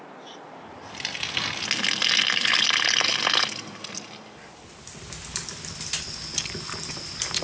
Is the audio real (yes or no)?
yes